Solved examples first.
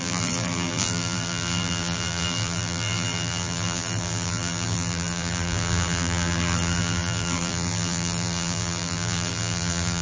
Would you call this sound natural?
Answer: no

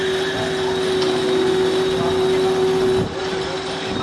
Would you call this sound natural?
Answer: yes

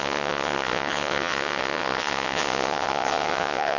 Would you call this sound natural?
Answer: no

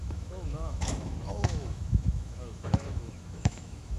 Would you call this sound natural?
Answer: no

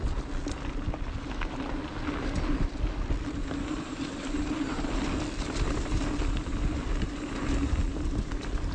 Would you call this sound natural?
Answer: yes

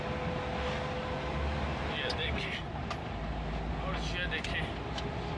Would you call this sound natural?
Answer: yes